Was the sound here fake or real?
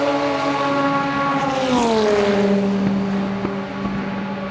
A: real